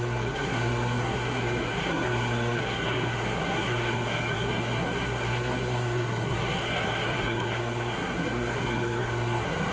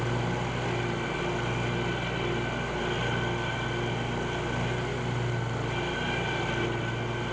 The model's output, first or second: first